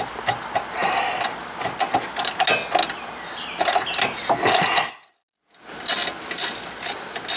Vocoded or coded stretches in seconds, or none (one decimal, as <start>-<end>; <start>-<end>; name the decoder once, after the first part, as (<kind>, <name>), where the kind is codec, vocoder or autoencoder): none